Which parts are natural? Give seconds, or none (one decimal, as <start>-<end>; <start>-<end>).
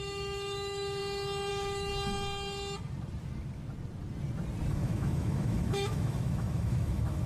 1.0-1.5; 1.9-4.7